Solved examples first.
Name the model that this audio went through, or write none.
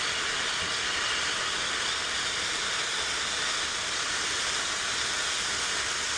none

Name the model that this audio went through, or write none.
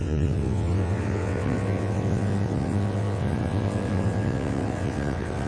vocoder, WaveNeXt